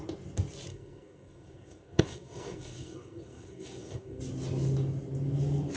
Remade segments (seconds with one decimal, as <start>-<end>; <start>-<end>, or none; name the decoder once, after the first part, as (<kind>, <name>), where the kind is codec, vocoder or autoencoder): 0.7-4.2 (codec, SNAC)